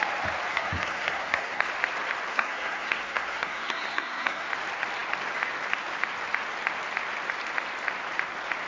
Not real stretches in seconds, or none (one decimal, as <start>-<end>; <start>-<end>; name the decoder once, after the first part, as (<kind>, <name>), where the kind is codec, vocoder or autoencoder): 0.5-1.7 (codec, SNAC); 2.3-4.5